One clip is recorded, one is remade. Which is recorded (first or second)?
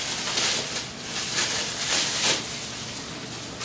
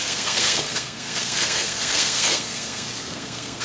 first